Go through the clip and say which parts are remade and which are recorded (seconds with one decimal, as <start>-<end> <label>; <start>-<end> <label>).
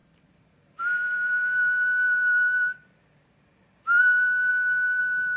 0.0-4.5 recorded; 4.5-5.0 remade; 5.0-5.4 recorded